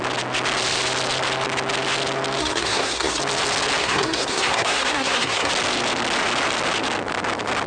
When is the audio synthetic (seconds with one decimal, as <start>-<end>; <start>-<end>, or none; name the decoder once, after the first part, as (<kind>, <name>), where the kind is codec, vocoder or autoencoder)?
2.4-3.2 (codec, SNAC); 3.8-5.5